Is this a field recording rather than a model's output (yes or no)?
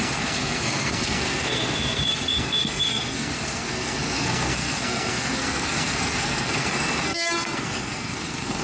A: no